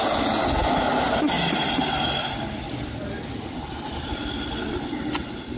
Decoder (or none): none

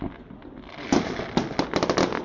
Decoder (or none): none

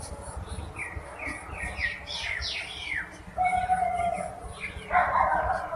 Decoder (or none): none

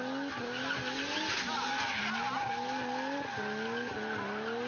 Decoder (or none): none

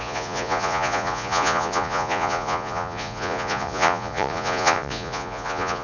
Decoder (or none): vocoder, Vocos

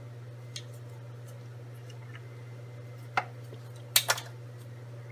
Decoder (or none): none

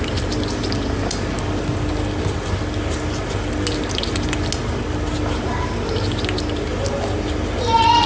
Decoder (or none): none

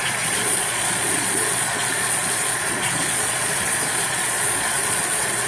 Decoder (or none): vocoder, Vocos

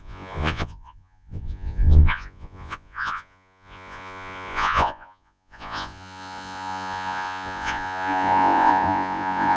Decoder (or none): vocoder, Vocos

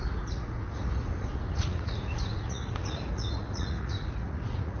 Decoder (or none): vocoder, Vocos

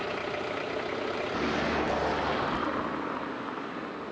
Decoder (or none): none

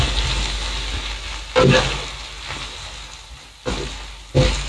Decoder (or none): none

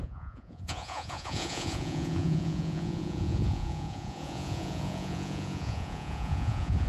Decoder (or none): vocoder, Vocos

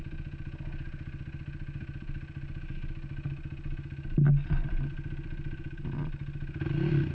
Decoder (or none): none